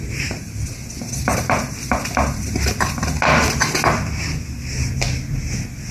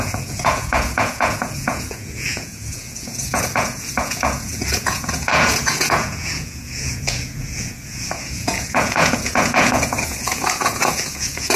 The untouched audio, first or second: first